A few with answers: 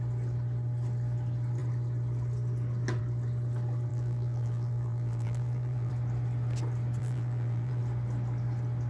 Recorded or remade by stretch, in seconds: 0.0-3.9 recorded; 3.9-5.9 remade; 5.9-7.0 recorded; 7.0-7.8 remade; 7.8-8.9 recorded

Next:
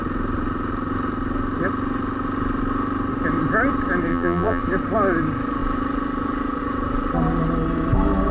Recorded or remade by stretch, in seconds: 0.0-4.1 recorded; 4.1-4.6 remade; 4.6-8.3 recorded

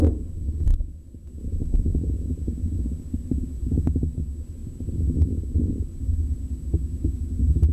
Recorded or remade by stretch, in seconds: 0.0-7.7 recorded

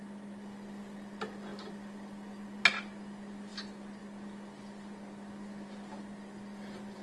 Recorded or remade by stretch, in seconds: 0.0-7.0 recorded

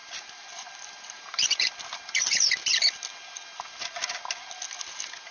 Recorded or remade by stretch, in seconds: 0.0-2.8 remade; 2.8-5.3 recorded